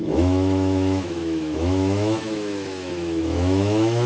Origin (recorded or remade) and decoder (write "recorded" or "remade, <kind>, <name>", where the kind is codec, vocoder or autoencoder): remade, autoencoder, DAC-VAE